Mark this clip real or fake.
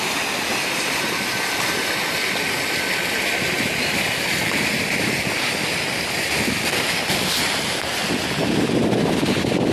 real